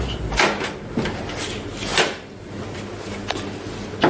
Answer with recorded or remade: recorded